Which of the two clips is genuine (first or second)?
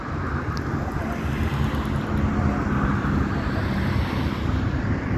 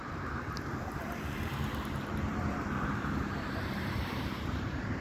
first